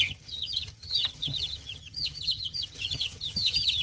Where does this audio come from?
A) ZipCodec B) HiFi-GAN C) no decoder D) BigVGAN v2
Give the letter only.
B